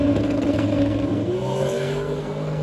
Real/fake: fake